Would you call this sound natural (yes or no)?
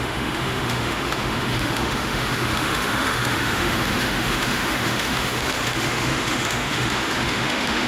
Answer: no